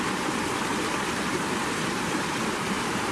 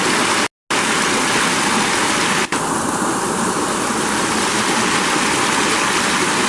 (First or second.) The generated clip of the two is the first